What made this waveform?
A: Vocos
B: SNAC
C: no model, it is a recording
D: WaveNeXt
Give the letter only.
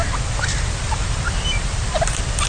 C